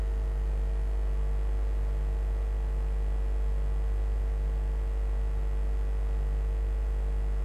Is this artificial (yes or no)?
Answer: no